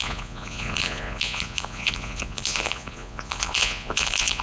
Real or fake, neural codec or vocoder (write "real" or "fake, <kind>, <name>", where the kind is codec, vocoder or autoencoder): fake, vocoder, Vocos